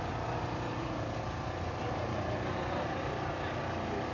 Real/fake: real